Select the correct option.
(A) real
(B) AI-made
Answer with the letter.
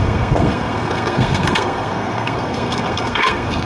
B